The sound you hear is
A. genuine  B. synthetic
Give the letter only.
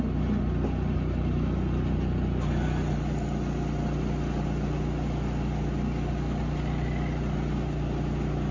A